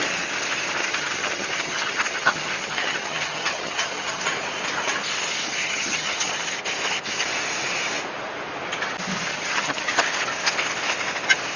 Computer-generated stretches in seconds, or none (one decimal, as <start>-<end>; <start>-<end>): 0.8-4.2; 5.6-6.3; 9.3-9.9